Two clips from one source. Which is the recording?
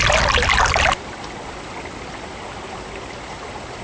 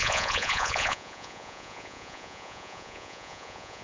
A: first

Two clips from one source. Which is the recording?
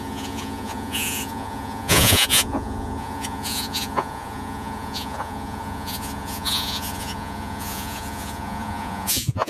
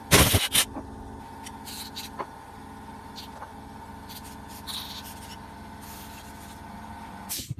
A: second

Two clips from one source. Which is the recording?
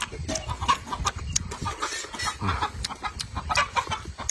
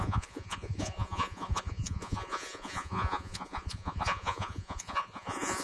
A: first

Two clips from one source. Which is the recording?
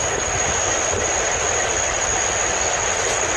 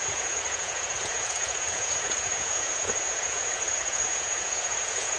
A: first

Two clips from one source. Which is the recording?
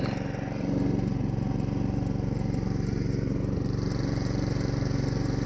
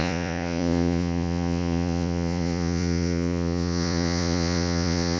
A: first